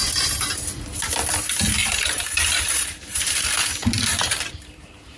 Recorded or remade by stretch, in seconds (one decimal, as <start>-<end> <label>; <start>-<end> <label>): 0.0-1.8 recorded; 1.8-3.5 remade; 3.5-4.1 recorded; 4.1-5.2 remade